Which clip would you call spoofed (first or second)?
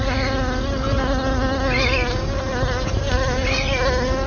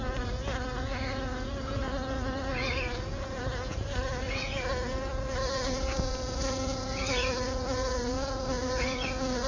second